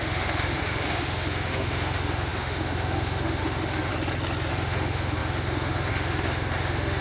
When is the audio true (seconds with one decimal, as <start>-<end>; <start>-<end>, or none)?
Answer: 3.9-4.5